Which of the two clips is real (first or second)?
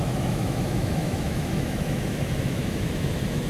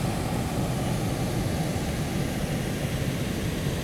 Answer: second